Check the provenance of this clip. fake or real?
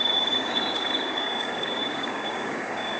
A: fake